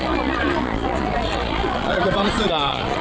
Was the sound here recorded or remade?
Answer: remade